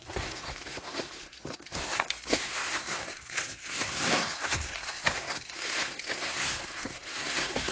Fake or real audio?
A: fake